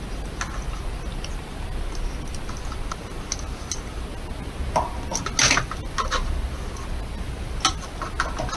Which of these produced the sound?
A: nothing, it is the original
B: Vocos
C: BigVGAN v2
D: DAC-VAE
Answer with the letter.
A